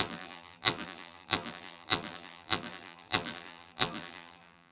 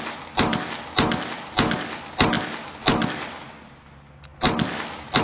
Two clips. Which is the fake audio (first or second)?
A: first